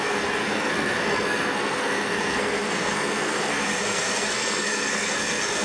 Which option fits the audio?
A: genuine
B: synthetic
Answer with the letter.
B